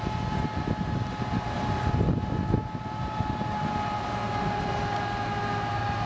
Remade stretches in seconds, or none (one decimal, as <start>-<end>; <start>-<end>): none